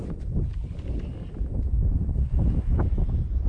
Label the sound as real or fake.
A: real